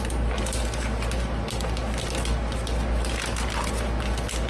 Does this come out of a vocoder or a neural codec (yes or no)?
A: no